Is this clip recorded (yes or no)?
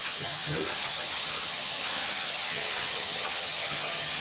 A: no